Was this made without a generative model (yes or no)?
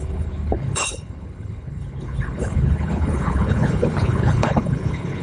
no